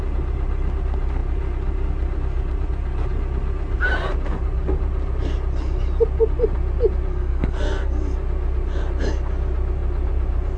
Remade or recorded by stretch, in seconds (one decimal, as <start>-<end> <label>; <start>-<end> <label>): 0.0-7.1 recorded; 7.1-8.0 remade; 8.0-10.6 recorded